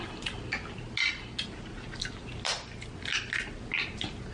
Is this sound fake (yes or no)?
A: no